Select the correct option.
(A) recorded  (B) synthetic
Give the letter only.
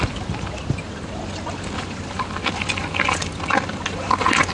A